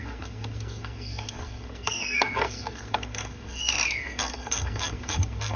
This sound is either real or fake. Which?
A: fake